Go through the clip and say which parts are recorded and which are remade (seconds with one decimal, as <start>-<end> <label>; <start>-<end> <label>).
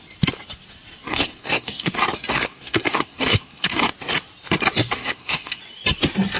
0.0-1.1 recorded; 1.1-1.9 remade; 1.9-2.3 recorded; 2.3-3.9 remade; 3.9-5.0 recorded; 5.0-5.6 remade; 5.6-6.4 recorded